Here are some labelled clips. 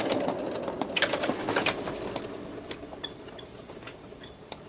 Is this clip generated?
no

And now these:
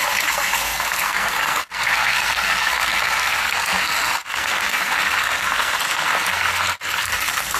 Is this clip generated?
yes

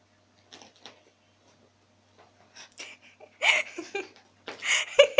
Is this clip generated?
no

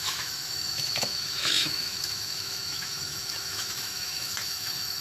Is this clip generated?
yes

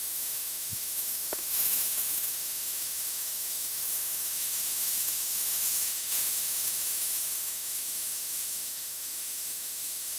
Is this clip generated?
yes